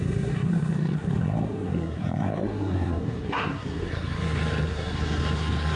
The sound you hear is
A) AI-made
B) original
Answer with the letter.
A